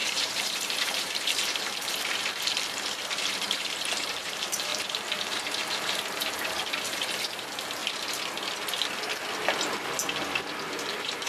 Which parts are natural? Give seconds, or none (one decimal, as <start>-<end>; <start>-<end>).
7.8-10.7